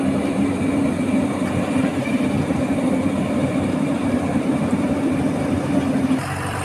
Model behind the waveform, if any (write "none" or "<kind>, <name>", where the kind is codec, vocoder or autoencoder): vocoder, BigVGAN v2